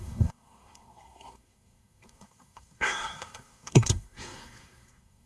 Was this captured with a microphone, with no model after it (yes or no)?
no